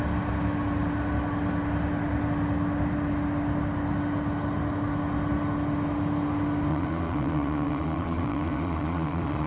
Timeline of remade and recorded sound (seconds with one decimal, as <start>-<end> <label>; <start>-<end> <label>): 0.0-6.7 recorded; 6.7-9.5 remade